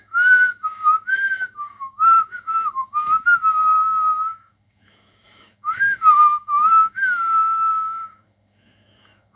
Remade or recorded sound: remade